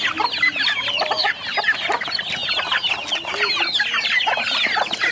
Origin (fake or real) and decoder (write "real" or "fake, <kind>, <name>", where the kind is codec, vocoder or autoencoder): real